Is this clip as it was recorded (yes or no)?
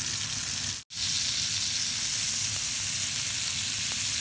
yes